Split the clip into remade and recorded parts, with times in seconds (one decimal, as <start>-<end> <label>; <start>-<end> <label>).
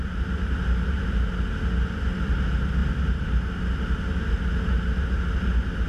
0.0-5.9 recorded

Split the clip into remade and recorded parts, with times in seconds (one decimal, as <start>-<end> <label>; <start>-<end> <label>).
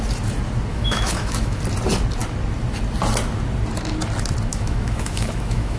0.0-0.7 recorded; 0.7-1.6 remade; 1.6-4.5 recorded; 4.5-5.8 remade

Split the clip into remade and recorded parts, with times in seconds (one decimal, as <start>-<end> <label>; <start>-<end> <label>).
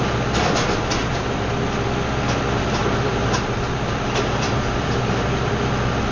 0.0-1.0 recorded; 1.0-1.5 remade; 1.5-2.8 recorded; 2.8-5.5 remade; 5.5-6.1 recorded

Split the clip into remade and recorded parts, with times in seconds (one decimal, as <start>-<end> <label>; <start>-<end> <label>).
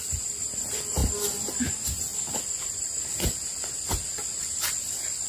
0.0-5.3 recorded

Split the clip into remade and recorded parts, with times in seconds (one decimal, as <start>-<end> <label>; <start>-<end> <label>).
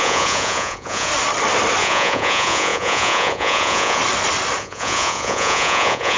0.0-1.1 remade; 1.1-1.8 recorded; 1.8-4.0 remade; 4.0-4.6 recorded; 4.6-6.2 remade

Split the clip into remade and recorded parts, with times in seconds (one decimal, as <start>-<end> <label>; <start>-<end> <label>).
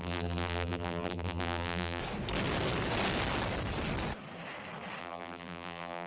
0.0-2.0 remade; 2.0-5.0 recorded; 5.0-6.1 remade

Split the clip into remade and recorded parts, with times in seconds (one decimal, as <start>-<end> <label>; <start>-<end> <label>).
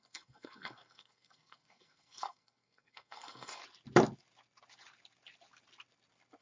0.0-3.6 remade; 3.6-6.4 recorded